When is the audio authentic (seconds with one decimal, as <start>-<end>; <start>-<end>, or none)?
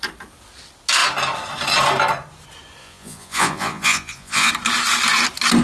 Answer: 0.0-2.8; 4.5-5.6